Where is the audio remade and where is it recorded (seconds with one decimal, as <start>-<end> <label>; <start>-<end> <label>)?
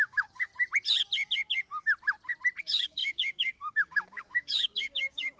0.0-0.5 remade; 0.5-2.6 recorded; 2.6-5.4 remade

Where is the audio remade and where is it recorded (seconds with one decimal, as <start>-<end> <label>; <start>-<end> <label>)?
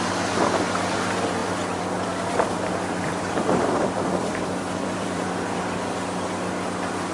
0.0-1.4 recorded; 1.4-5.6 remade; 5.6-7.1 recorded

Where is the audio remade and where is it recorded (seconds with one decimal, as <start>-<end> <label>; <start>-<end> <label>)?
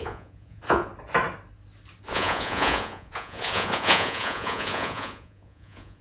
0.0-0.9 remade; 0.9-2.0 recorded; 2.0-6.0 remade